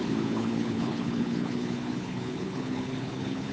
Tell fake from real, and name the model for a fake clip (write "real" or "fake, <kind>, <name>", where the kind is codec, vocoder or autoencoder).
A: fake, codec, HILCodec